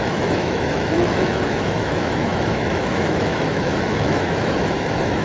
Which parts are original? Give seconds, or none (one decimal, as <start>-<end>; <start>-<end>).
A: none